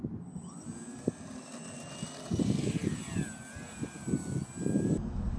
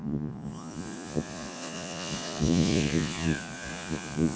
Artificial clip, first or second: second